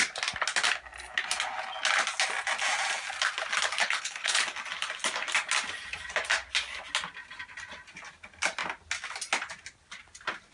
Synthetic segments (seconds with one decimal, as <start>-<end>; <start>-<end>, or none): 3.8-4.4